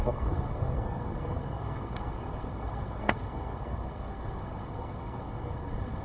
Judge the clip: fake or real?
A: fake